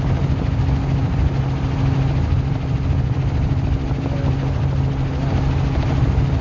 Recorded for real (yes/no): yes